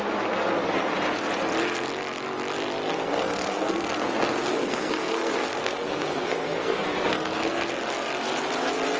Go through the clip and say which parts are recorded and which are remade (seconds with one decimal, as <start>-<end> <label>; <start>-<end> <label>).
0.0-2.9 recorded; 2.9-7.7 remade; 7.7-9.0 recorded